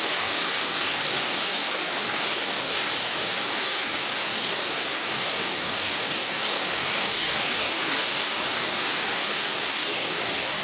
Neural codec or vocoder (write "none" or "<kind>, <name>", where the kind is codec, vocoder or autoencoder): codec, DAC